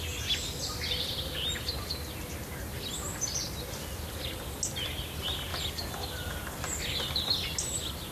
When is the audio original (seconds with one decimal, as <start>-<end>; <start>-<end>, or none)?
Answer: 0.0-8.1